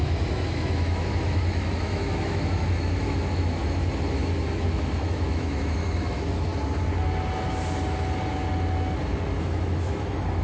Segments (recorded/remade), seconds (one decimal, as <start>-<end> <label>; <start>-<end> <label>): 0.0-3.6 remade; 3.6-4.1 recorded; 4.1-6.5 remade; 6.5-9.4 recorded; 9.4-10.4 remade